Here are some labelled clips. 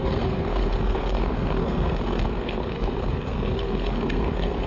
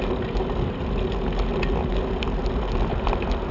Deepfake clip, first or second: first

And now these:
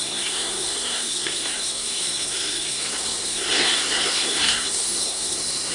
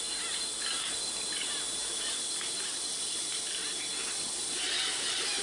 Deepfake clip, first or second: first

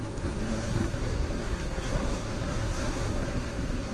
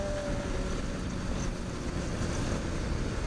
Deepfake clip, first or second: first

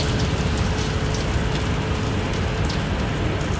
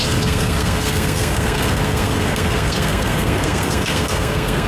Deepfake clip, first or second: second